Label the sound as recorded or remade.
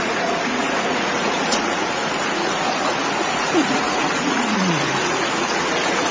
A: remade